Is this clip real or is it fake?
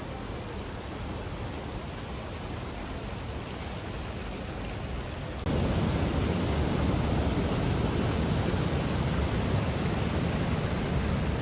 real